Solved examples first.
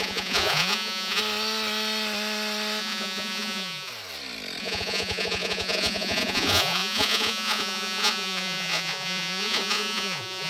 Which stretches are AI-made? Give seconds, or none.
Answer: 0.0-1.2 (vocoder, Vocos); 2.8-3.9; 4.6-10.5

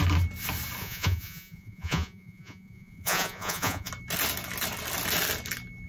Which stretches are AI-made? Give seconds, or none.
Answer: 0.8-3.9 (vocoder, Vocos)